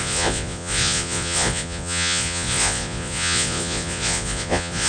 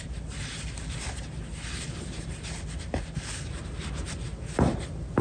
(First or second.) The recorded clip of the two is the second